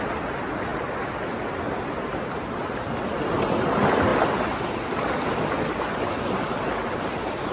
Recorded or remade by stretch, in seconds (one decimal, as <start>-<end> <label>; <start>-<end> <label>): 0.0-7.5 recorded